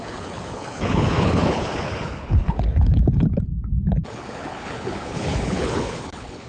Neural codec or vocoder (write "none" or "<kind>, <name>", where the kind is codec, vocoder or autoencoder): codec, HILCodec